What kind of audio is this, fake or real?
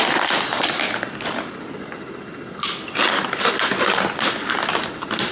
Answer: real